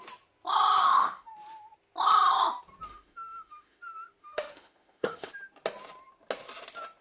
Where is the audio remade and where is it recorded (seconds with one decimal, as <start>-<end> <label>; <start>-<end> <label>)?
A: 0.0-0.8 recorded; 0.8-1.3 remade; 1.3-2.9 recorded; 2.9-3.8 remade; 3.8-4.2 recorded; 4.2-5.3 remade; 5.3-7.0 recorded